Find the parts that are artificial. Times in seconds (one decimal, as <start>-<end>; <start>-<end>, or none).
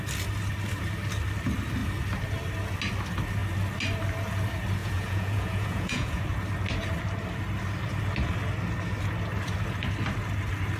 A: 4.8-6.2